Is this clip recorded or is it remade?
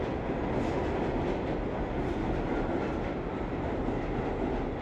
recorded